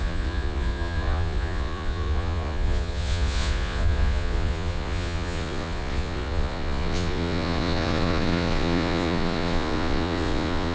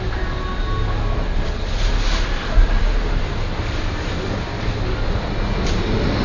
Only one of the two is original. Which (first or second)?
second